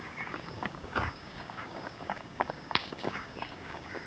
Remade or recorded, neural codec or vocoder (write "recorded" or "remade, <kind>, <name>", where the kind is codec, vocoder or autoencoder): remade, codec, DAC